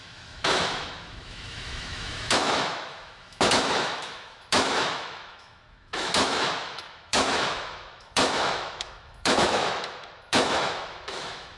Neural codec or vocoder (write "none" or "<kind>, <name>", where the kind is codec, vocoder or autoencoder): autoencoder, DAC-VAE